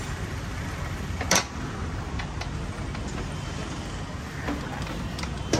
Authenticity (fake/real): real